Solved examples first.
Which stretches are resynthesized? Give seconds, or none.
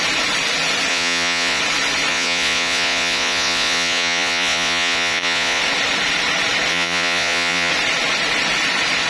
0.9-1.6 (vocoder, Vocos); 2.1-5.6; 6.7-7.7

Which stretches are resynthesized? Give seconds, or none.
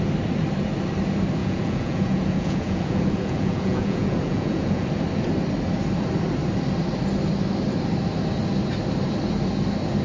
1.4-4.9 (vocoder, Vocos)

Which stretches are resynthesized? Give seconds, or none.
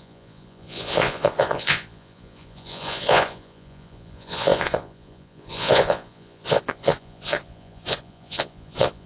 0.0-9.1 (vocoder, Vocos)